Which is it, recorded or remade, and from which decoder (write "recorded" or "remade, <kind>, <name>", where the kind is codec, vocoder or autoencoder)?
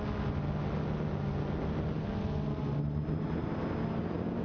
recorded